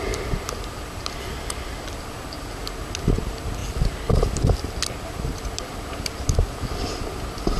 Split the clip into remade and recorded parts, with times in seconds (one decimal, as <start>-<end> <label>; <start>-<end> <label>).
0.0-7.6 recorded